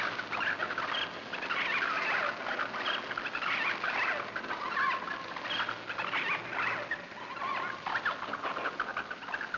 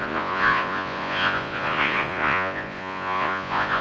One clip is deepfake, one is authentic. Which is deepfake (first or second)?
second